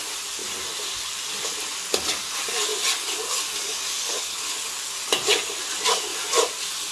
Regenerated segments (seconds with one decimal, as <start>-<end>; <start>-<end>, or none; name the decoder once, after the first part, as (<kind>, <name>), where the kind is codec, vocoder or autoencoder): 4.1-4.6 (codec, HILCodec)

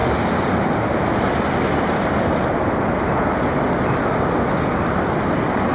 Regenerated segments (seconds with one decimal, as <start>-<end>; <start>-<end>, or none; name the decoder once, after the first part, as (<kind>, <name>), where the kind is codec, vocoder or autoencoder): none